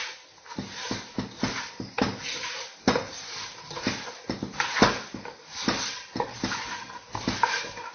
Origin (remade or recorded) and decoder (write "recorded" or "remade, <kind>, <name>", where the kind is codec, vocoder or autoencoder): recorded